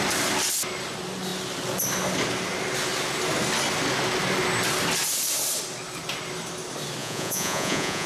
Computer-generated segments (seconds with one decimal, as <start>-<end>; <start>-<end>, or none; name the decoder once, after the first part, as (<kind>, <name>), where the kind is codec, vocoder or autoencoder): 7.0-8.1 (vocoder, Vocos)